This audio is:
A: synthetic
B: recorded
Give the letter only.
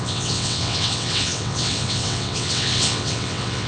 A